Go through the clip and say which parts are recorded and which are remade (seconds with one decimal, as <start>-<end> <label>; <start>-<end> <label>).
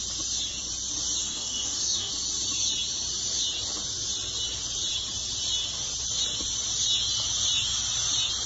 0.0-1.2 recorded; 1.2-2.1 remade; 2.1-8.5 recorded